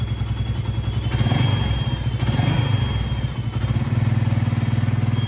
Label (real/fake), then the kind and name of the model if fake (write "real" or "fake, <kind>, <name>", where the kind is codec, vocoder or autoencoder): real